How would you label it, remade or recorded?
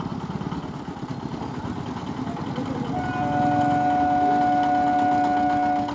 recorded